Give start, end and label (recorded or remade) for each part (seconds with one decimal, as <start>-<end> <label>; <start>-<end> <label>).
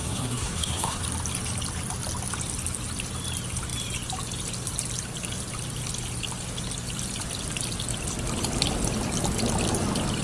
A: 0.0-1.0 remade; 1.0-10.2 recorded